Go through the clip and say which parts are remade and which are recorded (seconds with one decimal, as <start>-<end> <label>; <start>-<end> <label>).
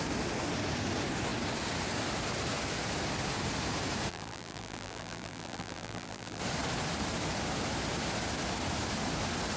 0.0-4.1 recorded; 4.1-6.4 remade; 6.4-9.6 recorded